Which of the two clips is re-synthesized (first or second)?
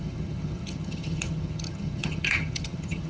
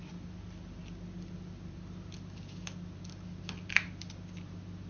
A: first